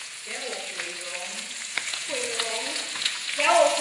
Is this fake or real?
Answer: fake